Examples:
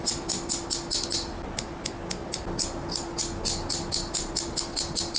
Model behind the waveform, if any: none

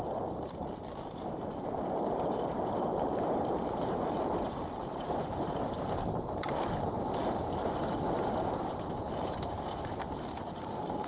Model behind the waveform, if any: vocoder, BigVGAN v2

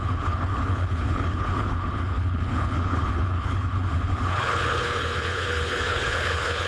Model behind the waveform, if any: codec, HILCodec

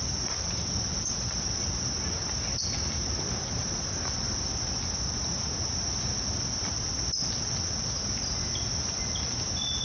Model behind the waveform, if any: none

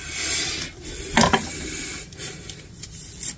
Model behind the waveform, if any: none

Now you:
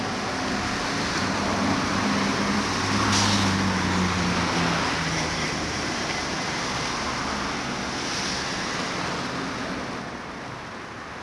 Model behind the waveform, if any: none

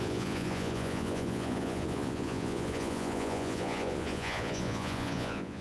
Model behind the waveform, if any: vocoder, Vocos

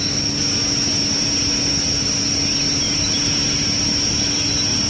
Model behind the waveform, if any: none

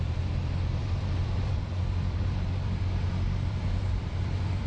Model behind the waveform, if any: vocoder, BigVGAN v2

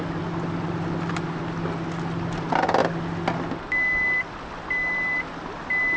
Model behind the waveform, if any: none